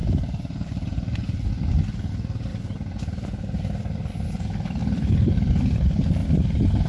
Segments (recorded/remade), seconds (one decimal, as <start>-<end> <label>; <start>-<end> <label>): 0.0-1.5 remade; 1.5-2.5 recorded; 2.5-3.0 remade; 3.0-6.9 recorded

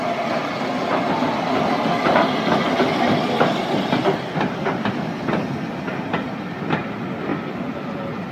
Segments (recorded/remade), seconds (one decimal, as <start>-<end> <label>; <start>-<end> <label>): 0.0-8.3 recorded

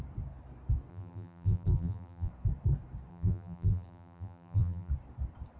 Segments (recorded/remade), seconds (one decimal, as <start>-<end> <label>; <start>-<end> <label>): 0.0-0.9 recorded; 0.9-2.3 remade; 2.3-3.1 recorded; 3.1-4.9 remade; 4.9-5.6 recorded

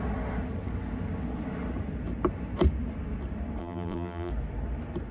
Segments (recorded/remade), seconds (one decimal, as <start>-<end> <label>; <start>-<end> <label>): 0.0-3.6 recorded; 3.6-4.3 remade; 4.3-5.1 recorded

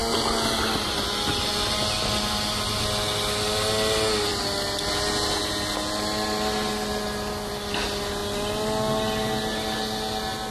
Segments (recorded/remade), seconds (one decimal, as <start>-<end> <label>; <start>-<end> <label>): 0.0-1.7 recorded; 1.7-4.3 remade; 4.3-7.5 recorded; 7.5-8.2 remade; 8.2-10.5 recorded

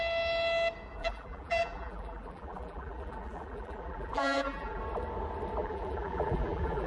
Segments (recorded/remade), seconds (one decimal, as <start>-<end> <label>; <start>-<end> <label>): 0.0-1.0 recorded; 1.0-4.8 remade; 4.8-5.6 recorded; 5.6-6.9 remade